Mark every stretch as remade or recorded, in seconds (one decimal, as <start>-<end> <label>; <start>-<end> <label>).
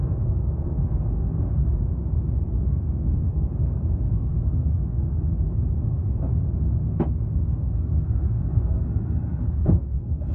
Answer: 0.0-1.6 remade; 1.6-2.4 recorded; 2.4-6.3 remade; 6.3-6.9 recorded; 6.9-10.3 remade